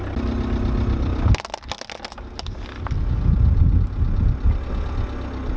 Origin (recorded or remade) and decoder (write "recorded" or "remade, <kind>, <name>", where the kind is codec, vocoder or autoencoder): recorded